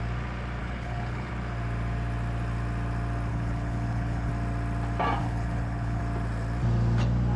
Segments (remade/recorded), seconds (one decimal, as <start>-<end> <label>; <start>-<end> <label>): 0.0-0.6 recorded; 0.6-1.3 remade; 1.3-3.3 recorded; 3.3-4.3 remade; 4.3-5.2 recorded; 5.2-6.0 remade; 6.0-7.4 recorded